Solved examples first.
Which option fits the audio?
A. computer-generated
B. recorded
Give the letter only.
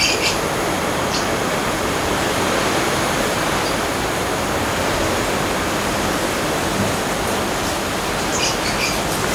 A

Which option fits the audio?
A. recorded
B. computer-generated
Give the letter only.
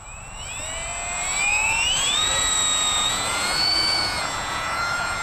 B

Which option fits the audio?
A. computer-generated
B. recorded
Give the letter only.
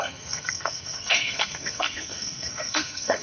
A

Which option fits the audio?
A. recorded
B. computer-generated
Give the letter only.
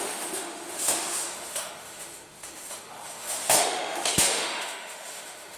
B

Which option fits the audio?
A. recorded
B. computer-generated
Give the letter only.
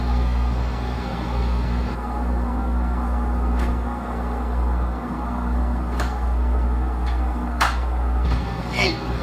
B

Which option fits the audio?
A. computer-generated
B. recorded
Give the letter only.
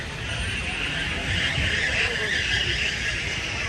B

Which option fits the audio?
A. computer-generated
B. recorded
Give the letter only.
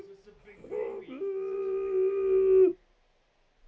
B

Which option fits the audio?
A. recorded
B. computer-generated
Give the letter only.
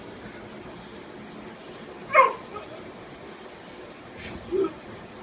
A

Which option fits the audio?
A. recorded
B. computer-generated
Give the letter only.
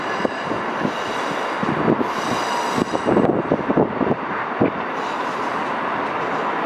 A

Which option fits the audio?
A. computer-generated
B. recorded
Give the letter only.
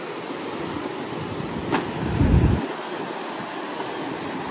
B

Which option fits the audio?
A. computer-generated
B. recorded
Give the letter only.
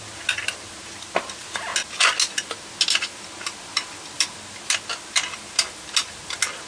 B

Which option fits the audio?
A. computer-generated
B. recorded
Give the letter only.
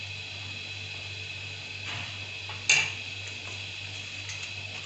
B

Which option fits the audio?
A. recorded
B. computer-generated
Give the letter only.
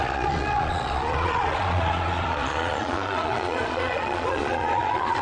B